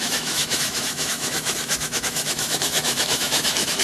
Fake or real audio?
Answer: fake